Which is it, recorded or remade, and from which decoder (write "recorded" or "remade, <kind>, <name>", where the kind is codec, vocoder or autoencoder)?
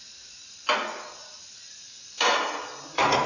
recorded